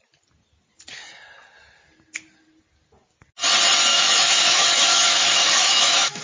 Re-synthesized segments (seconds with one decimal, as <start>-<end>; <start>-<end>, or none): 3.9-6.2